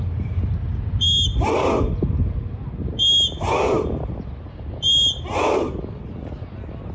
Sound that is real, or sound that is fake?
real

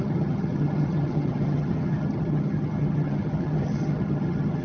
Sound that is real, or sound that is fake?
fake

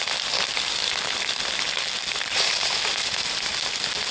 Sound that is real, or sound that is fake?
real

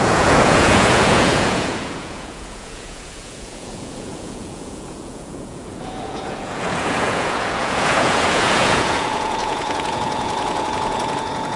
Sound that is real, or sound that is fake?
fake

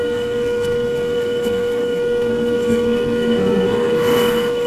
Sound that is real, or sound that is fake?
fake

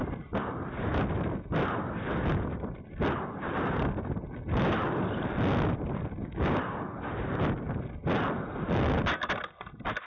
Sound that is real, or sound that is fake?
real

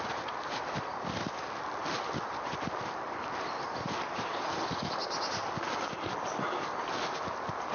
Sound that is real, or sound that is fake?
real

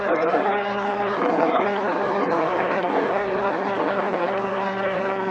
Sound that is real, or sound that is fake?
fake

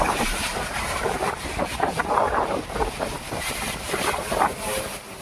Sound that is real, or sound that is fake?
fake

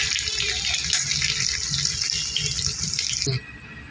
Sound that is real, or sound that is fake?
real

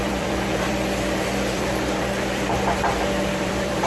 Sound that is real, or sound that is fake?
fake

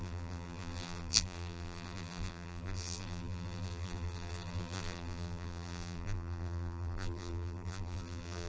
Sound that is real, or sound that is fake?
fake